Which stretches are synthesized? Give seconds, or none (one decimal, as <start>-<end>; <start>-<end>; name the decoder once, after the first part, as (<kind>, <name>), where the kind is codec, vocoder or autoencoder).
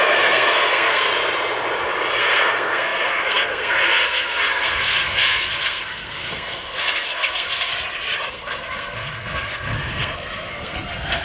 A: 0.0-1.1 (codec, SNAC); 2.2-7.7; 8.3-11.2